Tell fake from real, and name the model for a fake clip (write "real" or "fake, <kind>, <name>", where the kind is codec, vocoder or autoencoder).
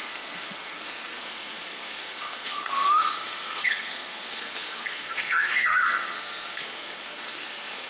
fake, codec, SNAC